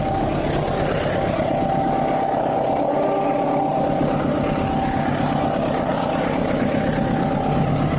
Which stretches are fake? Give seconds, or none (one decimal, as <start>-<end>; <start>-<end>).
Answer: none